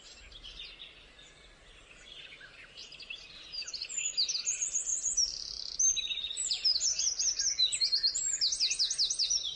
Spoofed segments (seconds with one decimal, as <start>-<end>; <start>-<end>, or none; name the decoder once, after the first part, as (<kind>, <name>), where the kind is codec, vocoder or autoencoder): 1.8-4.1 (vocoder, BigVGAN v2); 6.4-7.3